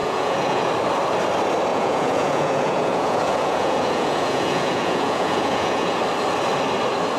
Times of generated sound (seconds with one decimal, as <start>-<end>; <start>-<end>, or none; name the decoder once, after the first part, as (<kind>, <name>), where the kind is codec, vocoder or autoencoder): 0.0-0.7 (vocoder, Vocos); 1.7-6.0